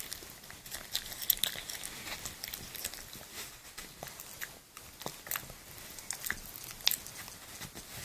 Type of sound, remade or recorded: recorded